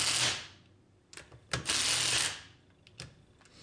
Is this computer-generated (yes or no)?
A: no